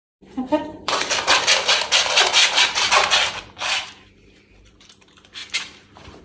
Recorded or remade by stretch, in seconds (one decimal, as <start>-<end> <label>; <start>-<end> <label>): 0.0-2.4 remade; 2.4-3.4 recorded; 3.4-5.4 remade; 5.4-6.2 recorded

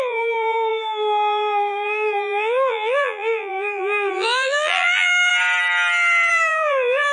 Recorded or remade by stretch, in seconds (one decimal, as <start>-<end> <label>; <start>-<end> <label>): 0.0-5.3 remade; 5.3-6.3 recorded; 6.3-7.1 remade

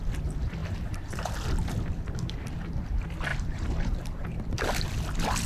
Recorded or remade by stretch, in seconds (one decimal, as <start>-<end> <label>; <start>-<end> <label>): 0.0-0.6 recorded; 0.6-1.2 remade; 1.2-3.3 recorded; 3.3-4.4 remade; 4.4-5.5 recorded

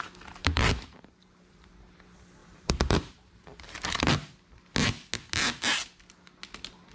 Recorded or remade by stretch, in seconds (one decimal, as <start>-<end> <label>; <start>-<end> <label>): 0.0-0.4 recorded; 0.4-1.7 remade; 1.7-2.4 recorded; 2.4-4.1 remade; 4.1-6.9 recorded

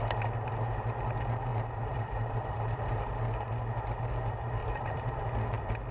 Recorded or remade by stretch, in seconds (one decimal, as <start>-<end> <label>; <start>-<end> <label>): 0.0-1.5 recorded; 1.5-3.0 remade; 3.0-4.6 recorded; 4.6-5.2 remade; 5.2-5.9 recorded

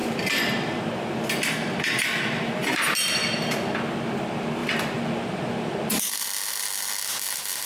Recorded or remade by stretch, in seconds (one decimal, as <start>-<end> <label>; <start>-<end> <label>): 0.0-0.8 remade; 0.8-2.6 recorded; 2.6-3.7 remade; 3.7-4.6 recorded; 4.6-5.8 remade; 5.8-7.7 recorded

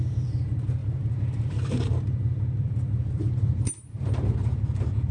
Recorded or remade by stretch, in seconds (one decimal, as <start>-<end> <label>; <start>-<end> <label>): 0.0-5.1 remade

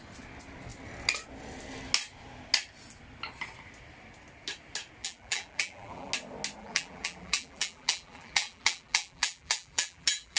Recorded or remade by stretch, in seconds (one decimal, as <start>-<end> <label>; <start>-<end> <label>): 0.0-5.0 recorded; 5.0-6.1 remade; 6.1-6.6 recorded; 6.6-10.4 remade